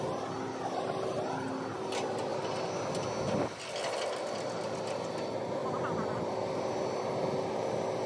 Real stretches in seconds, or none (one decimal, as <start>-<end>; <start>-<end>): 0.0-8.1